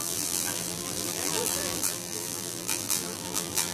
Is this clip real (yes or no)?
no